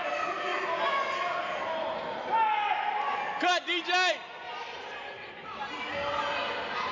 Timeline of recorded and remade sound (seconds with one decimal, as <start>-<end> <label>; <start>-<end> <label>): 0.0-6.9 recorded

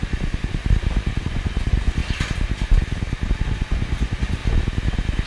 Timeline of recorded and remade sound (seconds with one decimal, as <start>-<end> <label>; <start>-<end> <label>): 0.0-0.6 remade; 0.6-1.2 recorded; 1.2-2.0 remade; 2.0-3.3 recorded; 3.3-4.4 remade; 4.4-5.3 recorded

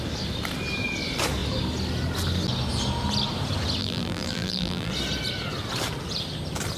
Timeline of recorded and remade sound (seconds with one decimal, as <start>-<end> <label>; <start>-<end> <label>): 0.0-3.8 recorded; 3.8-4.9 remade; 4.9-6.8 recorded

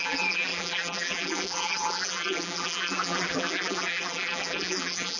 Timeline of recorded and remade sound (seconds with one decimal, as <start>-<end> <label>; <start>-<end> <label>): 0.0-5.2 remade